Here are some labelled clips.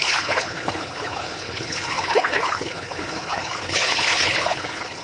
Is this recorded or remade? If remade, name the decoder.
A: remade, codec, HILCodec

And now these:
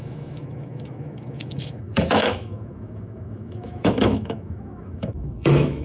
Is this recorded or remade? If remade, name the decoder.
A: remade, autoencoder, DAC-VAE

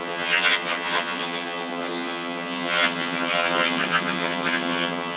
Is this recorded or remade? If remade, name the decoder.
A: remade, vocoder, HiFi-GAN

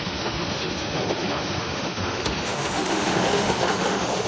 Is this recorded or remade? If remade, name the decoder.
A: remade, autoencoder, DAC-VAE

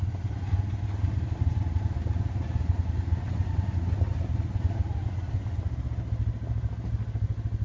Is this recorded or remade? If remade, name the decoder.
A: recorded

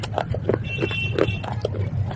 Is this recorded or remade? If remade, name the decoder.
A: recorded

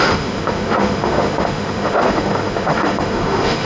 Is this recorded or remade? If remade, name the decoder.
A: remade, autoencoder, DAC-VAE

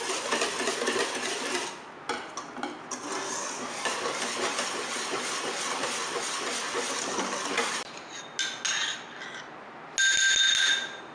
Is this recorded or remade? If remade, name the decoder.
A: recorded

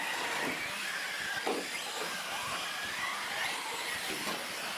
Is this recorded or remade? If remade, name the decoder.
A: recorded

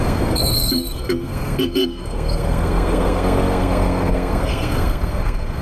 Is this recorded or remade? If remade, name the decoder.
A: remade, codec, SNAC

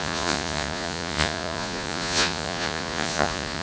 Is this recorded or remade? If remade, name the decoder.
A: remade, vocoder, Vocos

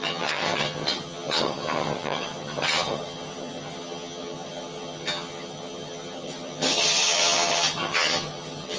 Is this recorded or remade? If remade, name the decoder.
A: remade, vocoder, HiFi-GAN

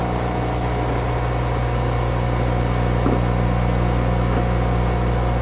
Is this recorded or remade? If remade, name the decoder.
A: recorded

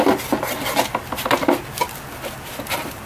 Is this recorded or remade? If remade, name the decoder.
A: remade, vocoder, BigVGAN v2